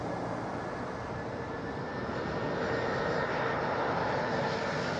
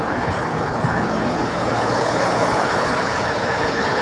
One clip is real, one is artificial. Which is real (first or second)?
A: first